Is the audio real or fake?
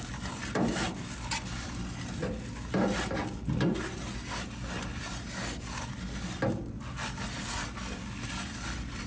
real